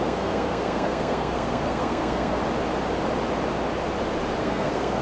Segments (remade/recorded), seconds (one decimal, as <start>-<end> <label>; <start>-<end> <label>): 0.0-2.4 remade; 2.4-4.4 recorded; 4.4-5.0 remade